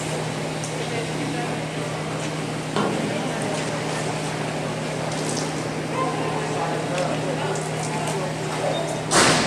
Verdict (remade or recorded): recorded